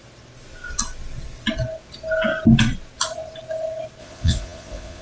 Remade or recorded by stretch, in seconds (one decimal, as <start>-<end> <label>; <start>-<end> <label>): 0.0-4.0 recorded; 4.0-5.0 remade